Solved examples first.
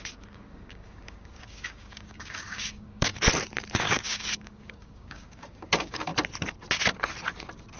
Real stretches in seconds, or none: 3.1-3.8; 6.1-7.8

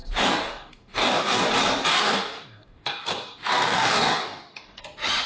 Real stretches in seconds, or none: 1.5-1.9; 4.8-5.3

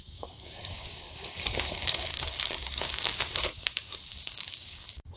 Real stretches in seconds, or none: none

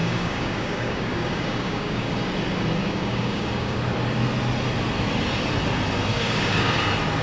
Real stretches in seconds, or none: 2.1-2.8; 3.8-6.1; 6.8-7.2

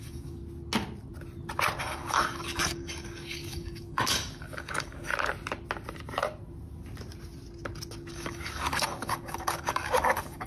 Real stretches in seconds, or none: 0.4-1.8; 5.1-8.1

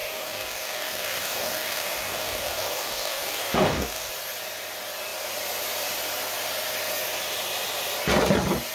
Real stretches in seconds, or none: 4.1-8.7